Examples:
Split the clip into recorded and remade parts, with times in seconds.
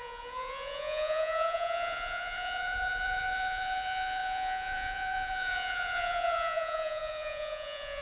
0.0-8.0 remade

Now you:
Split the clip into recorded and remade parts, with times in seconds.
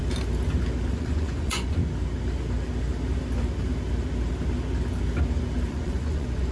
0.0-0.9 recorded; 0.9-1.8 remade; 1.8-5.7 recorded; 5.7-6.5 remade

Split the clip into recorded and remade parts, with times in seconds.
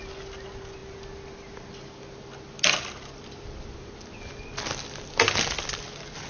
0.0-6.3 recorded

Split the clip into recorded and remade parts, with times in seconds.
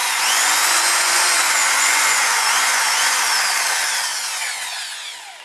0.0-3.2 remade; 3.2-4.1 recorded; 4.1-5.4 remade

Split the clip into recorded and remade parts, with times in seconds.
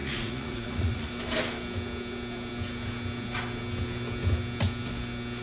0.0-1.1 remade; 1.1-5.4 recorded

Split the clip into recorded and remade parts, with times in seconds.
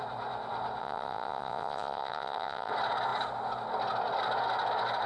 0.0-0.8 recorded; 0.8-2.7 remade; 2.7-5.1 recorded